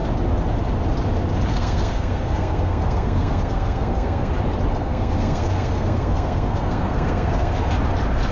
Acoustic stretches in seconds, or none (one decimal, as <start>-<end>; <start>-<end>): 0.0-1.5; 4.3-4.7; 7.7-8.3